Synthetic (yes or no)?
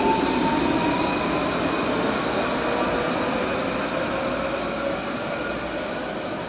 no